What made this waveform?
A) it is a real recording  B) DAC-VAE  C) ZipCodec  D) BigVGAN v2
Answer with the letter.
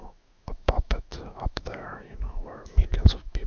B